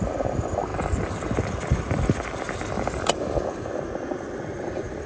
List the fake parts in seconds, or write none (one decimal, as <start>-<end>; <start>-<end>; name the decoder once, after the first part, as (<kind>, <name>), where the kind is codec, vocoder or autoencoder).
none